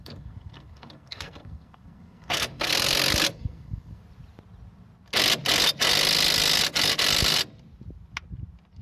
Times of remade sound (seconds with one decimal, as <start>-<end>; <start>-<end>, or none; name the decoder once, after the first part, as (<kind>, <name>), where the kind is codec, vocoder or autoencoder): 0.0-2.7 (codec, SNAC); 3.3-4.0

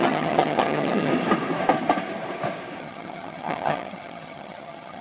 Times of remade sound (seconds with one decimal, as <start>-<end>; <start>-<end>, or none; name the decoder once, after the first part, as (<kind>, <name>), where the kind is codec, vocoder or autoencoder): 0.0-1.1 (vocoder, HiFi-GAN); 2.8-5.0

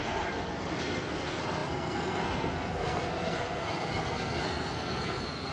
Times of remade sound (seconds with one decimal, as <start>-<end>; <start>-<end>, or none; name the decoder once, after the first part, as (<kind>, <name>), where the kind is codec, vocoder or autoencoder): 0.0-5.5 (codec, SNAC)

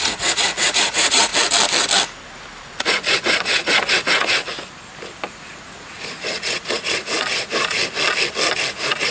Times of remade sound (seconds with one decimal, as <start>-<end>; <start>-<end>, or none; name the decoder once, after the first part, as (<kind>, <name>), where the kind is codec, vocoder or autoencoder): 0.0-1.3 (vocoder, Vocos); 2.6-4.5; 5.3-7.8; 8.7-9.1

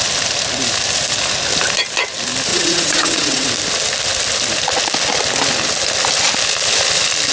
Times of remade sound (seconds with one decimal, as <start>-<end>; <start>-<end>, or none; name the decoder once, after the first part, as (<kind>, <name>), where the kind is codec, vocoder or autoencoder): 2.5-3.5 (vocoder, WaveNeXt)